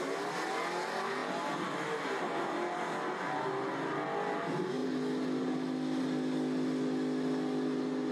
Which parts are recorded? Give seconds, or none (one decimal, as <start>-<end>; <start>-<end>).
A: 0.0-8.1